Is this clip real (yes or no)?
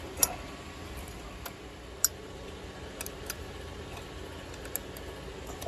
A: yes